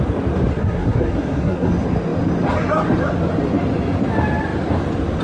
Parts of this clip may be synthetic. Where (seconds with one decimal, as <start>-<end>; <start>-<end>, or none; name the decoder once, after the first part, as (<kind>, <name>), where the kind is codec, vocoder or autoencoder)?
0.5-1.7 (codec, SNAC)

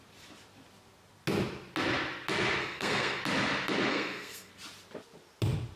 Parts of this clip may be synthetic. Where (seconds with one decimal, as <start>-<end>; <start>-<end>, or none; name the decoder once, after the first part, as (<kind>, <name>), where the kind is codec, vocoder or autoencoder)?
2.6-3.2 (codec, SNAC); 3.9-4.5

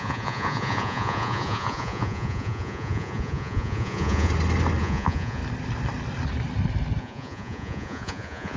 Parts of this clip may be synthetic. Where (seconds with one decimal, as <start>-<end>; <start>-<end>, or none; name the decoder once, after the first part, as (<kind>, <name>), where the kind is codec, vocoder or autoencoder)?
0.0-4.3 (vocoder, Vocos); 4.8-5.4; 7.0-8.6